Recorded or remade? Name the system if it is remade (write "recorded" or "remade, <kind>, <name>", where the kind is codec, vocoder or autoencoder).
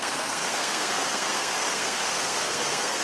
remade, codec, SNAC